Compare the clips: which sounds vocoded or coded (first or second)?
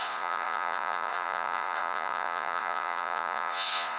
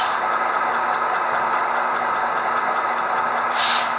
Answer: first